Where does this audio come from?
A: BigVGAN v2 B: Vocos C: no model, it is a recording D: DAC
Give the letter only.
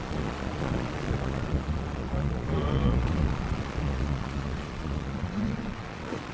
B